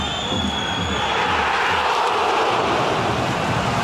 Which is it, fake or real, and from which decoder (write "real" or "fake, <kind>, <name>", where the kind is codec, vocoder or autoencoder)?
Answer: real